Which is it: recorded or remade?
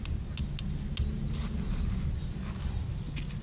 recorded